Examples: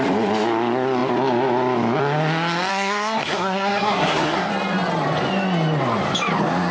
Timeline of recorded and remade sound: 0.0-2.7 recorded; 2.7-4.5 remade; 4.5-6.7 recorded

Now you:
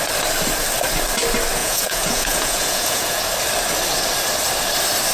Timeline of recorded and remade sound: 0.0-1.6 recorded; 1.6-3.2 remade; 3.2-5.1 recorded

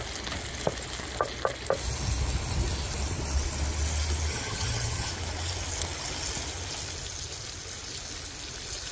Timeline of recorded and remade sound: 0.0-4.3 recorded; 4.3-5.1 remade; 5.1-8.9 recorded

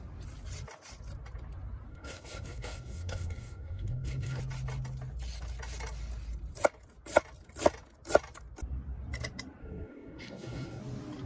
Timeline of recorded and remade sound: 0.0-1.9 recorded; 1.9-4.4 remade; 4.4-9.6 recorded; 9.6-10.8 remade; 10.8-11.3 recorded

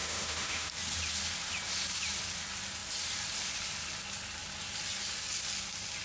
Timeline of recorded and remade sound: 0.0-0.7 remade; 0.7-6.0 recorded